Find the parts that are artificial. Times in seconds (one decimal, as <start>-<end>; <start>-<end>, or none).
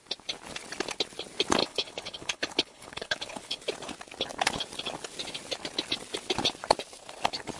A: 1.6-3.6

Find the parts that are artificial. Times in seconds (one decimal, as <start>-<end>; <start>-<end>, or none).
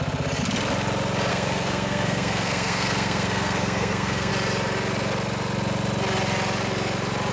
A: 1.3-4.3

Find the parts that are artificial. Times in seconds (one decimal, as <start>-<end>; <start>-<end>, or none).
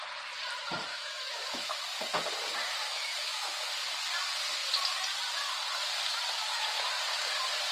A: 0.9-1.8; 2.8-3.7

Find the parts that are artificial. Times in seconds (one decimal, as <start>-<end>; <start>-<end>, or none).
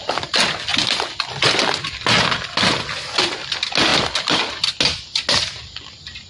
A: none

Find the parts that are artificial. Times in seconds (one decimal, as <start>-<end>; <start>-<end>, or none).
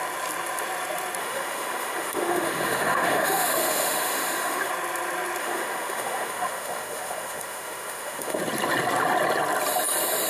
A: 1.2-4.7; 5.4-8.4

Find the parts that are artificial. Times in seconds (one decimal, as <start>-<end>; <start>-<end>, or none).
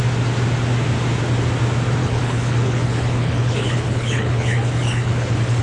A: 2.0-5.6